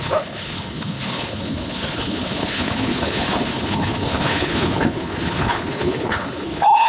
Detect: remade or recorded remade